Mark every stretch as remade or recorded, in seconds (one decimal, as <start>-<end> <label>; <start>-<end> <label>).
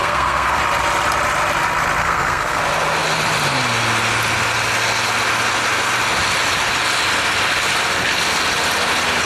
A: 0.0-0.6 remade; 0.6-2.0 recorded; 2.0-2.6 remade; 2.6-9.2 recorded